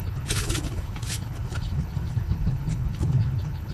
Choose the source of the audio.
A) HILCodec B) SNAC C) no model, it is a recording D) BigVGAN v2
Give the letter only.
A